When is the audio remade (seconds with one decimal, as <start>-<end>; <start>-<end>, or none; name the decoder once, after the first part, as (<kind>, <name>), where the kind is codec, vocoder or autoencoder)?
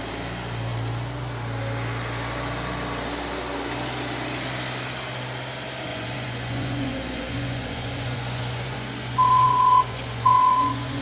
5.9-11.0 (vocoder, Vocos)